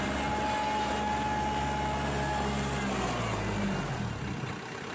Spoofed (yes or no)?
no